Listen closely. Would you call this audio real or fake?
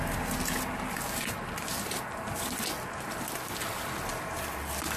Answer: real